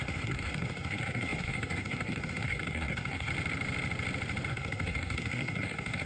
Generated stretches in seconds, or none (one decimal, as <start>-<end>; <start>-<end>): 0.0-3.3; 4.5-6.1